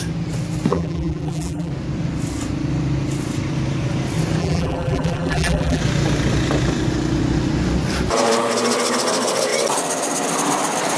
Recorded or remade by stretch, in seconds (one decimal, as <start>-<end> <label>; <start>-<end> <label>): 0.0-0.7 recorded; 0.7-1.7 remade; 1.7-4.4 recorded; 4.4-5.8 remade; 5.8-11.0 recorded